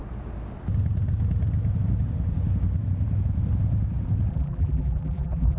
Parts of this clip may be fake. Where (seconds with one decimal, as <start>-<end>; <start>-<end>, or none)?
4.3-5.6